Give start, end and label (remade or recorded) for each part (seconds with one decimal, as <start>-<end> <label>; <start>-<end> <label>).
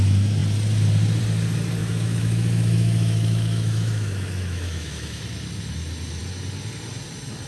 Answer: 0.0-1.8 recorded; 1.8-5.2 remade; 5.2-7.5 recorded